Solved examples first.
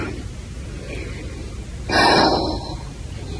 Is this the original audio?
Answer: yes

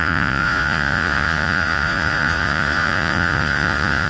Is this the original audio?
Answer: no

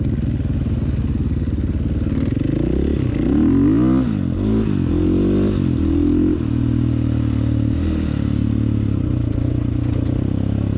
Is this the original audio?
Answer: yes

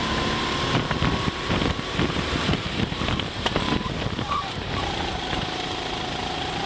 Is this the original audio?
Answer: no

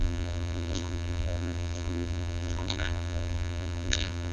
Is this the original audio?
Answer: no